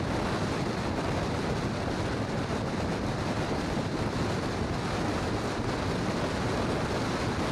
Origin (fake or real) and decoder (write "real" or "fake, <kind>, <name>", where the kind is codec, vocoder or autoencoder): real